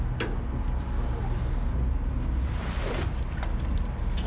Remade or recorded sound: recorded